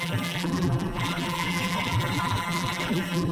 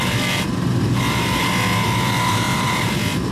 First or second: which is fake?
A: first